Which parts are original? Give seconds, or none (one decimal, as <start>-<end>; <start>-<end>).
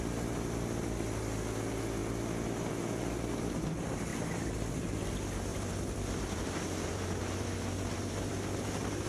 0.0-5.5; 8.3-9.1